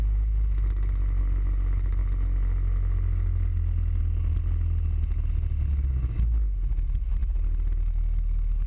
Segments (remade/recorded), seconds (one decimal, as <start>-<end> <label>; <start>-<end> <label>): 0.0-8.7 recorded